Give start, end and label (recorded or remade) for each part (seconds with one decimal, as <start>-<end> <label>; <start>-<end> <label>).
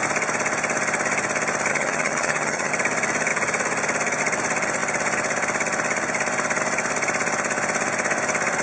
0.0-1.7 recorded; 1.7-2.7 remade; 2.7-8.6 recorded